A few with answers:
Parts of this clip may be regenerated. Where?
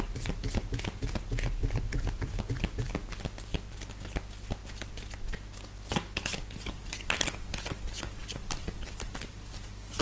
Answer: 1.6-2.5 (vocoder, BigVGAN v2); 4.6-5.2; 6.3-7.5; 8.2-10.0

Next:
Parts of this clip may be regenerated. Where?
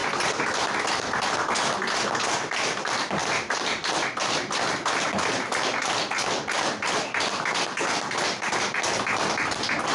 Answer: none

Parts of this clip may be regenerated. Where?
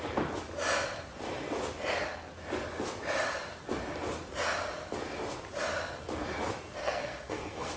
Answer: 6.8-7.8 (codec, SNAC)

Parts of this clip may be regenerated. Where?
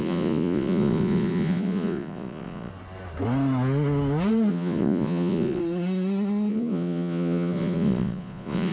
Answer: 0.0-2.7 (vocoder, Vocos); 4.5-5.6; 6.5-8.7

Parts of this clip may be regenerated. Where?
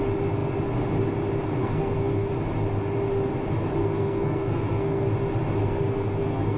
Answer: 1.6-2.3 (codec, SNAC); 3.8-5.1; 5.6-6.6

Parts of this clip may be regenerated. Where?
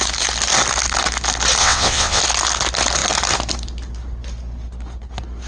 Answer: 1.6-2.2 (vocoder, WaveNeXt)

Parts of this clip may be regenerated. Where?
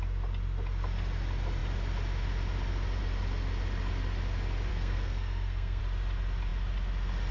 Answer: 4.7-5.8 (codec, SNAC)